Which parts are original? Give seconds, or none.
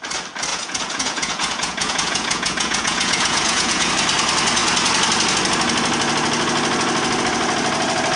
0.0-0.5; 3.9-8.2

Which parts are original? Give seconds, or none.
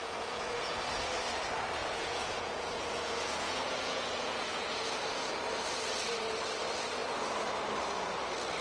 0.8-1.8; 5.3-8.6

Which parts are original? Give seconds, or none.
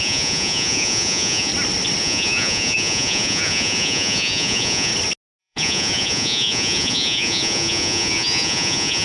1.5-2.0; 4.9-5.4